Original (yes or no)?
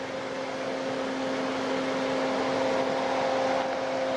yes